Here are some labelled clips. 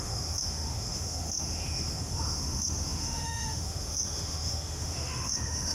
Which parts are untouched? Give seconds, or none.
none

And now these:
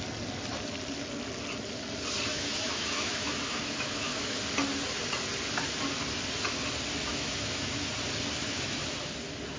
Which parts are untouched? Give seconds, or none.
0.0-2.3; 4.4-7.1; 7.9-8.4; 8.9-9.6

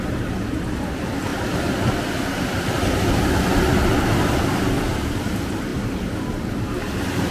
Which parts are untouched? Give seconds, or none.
0.0-7.3

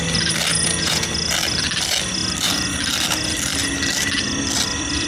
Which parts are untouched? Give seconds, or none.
0.0-0.5; 1.1-5.1

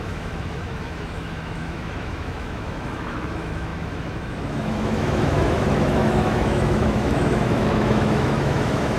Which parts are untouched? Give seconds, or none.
none

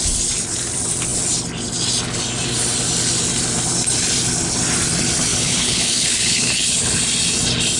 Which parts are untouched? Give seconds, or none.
0.0-5.3; 6.9-7.8

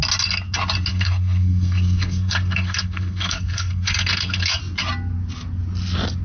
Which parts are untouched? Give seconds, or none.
0.0-0.9; 4.6-6.2

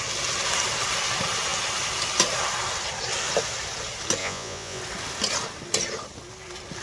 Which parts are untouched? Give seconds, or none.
0.0-4.2; 4.8-6.8